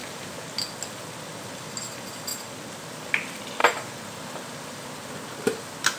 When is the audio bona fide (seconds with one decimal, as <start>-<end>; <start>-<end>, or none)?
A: 0.6-3.6; 4.9-6.0